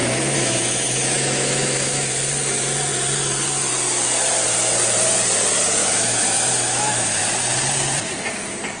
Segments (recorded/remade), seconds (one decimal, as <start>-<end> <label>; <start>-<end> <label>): 0.0-2.1 remade; 2.1-5.8 recorded; 5.8-7.2 remade; 7.2-8.8 recorded